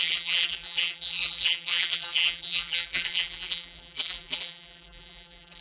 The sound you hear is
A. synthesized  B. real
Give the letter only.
A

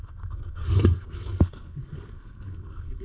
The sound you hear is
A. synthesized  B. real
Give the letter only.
A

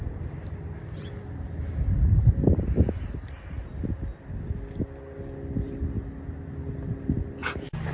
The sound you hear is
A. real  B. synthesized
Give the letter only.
A